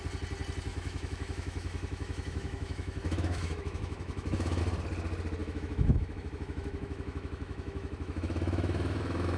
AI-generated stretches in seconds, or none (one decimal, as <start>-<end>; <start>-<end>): 0.7-4.6; 5.4-9.4